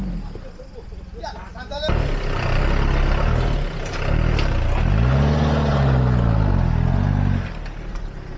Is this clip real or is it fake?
real